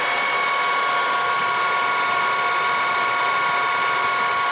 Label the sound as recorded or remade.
recorded